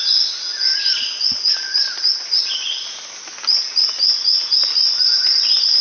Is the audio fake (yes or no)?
no